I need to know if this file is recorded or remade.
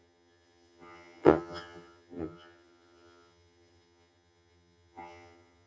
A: remade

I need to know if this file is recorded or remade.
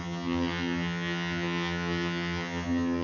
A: remade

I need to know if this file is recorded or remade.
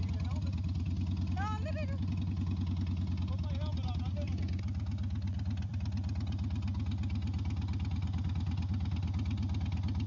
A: recorded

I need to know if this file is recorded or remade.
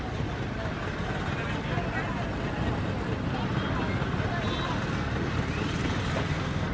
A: recorded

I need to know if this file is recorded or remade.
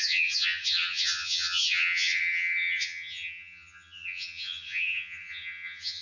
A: remade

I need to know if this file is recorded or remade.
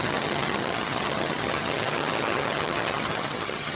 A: remade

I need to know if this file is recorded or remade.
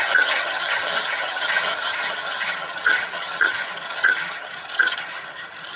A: remade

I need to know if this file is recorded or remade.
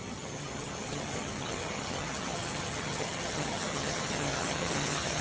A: remade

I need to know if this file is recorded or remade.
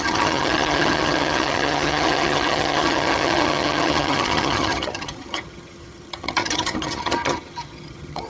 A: remade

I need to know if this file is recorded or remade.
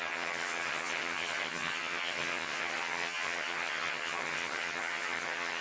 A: remade